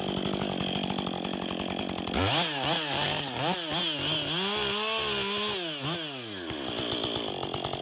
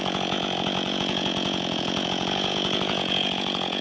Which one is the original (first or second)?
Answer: first